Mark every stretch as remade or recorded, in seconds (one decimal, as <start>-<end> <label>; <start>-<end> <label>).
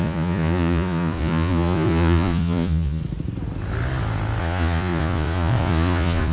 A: 0.0-3.0 remade; 3.0-4.4 recorded; 4.4-6.3 remade